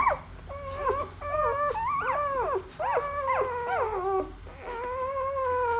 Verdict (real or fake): real